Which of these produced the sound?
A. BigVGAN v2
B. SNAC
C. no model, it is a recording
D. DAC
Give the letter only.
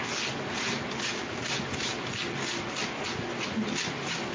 C